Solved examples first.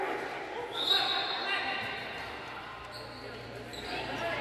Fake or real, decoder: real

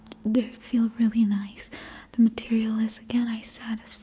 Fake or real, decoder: fake, codec, DAC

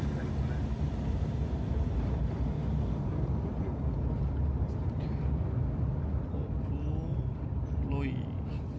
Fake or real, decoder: real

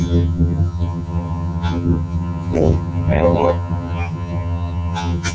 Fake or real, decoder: fake, vocoder, HiFi-GAN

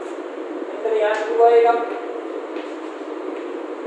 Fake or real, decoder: real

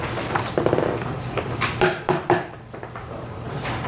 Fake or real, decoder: fake, vocoder, BigVGAN v2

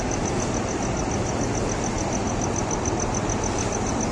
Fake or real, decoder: real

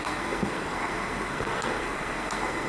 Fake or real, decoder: fake, codec, SNAC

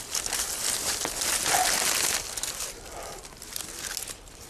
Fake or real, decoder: real